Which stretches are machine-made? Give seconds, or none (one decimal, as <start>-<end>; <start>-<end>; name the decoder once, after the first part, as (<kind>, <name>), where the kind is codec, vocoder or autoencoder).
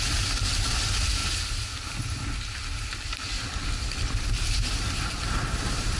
none